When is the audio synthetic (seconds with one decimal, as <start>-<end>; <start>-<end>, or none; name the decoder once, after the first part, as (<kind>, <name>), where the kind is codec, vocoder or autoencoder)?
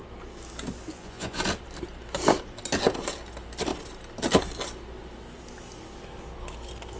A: 0.9-1.4 (vocoder, Vocos)